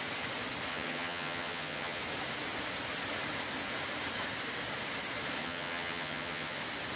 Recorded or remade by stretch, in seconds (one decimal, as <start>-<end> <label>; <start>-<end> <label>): 0.0-0.7 recorded; 0.7-2.0 remade; 2.0-5.4 recorded; 5.4-6.6 remade; 6.6-7.0 recorded